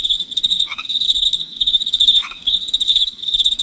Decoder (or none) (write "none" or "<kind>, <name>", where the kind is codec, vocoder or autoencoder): codec, SNAC